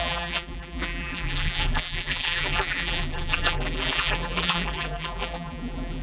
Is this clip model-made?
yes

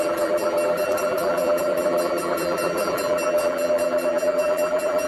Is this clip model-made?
yes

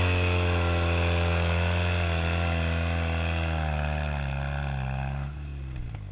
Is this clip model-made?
no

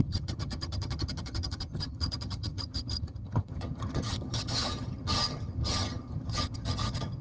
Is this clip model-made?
yes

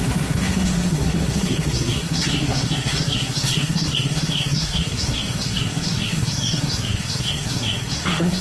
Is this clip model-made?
yes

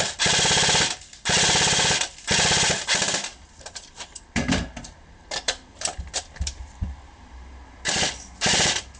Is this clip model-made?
yes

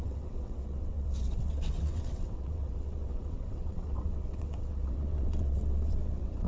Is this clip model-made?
yes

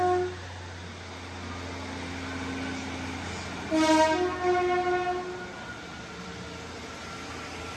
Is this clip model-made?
no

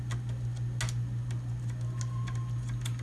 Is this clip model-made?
no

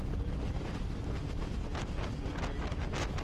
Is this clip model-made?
no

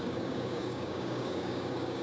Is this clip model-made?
yes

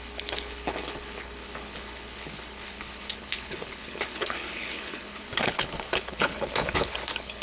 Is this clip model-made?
yes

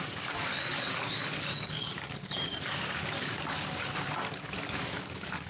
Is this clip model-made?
yes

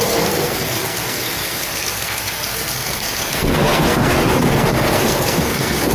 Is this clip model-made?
yes